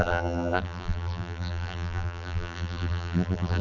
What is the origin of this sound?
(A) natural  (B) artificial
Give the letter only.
B